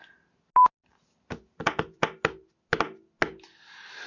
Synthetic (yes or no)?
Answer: no